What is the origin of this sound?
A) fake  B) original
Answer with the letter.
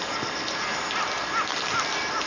B